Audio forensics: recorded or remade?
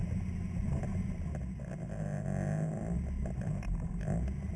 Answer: recorded